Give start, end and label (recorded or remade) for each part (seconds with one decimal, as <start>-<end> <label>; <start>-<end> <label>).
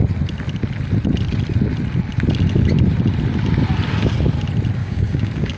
0.0-4.8 recorded; 4.8-5.6 remade